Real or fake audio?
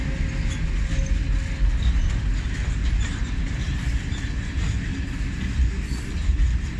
real